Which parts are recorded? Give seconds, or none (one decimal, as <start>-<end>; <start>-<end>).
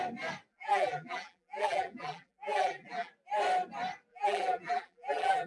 0.0-0.5; 3.1-4.1